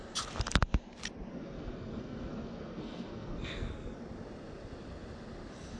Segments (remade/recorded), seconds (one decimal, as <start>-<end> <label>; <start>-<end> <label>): 0.0-1.3 recorded; 1.3-4.0 remade; 4.0-5.8 recorded